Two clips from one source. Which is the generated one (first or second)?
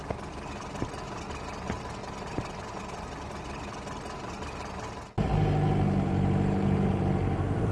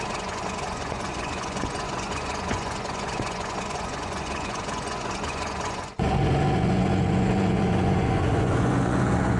second